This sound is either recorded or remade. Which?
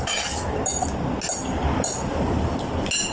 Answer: recorded